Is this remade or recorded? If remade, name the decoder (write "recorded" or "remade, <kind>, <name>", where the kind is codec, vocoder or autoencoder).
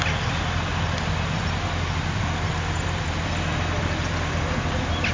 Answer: recorded